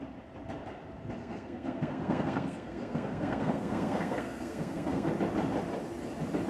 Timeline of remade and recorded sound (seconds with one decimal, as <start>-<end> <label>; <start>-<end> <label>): 0.0-1.2 recorded; 1.2-5.1 remade; 5.1-6.5 recorded